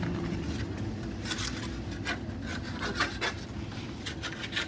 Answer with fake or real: real